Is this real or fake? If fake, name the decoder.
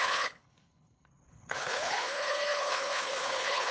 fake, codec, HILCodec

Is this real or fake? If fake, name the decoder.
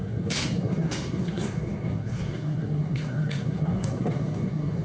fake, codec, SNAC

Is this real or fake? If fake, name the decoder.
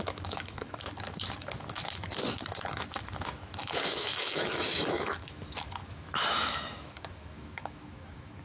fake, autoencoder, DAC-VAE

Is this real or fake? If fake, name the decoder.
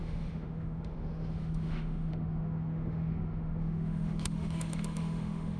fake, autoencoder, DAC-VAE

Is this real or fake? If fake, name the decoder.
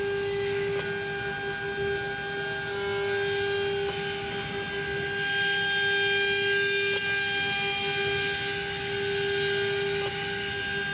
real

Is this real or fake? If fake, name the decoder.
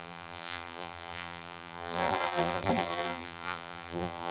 fake, vocoder, BigVGAN v2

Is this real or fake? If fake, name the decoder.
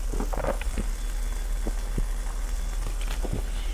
real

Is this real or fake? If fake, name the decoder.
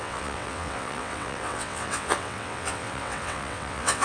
fake, vocoder, WaveNeXt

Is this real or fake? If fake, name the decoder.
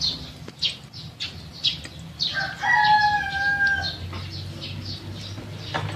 real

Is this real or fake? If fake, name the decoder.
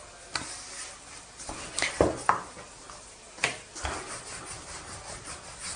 real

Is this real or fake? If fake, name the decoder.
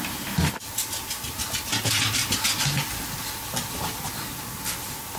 real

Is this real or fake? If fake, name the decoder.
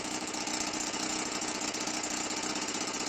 fake, vocoder, Vocos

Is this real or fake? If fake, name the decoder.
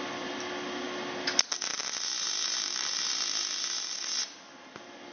real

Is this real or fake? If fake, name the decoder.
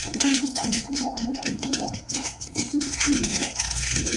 fake, codec, SNAC